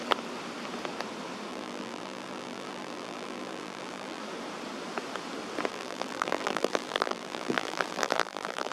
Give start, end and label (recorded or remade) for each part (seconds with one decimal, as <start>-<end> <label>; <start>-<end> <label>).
0.0-1.5 recorded; 1.5-4.2 remade; 4.2-5.7 recorded; 5.7-8.7 remade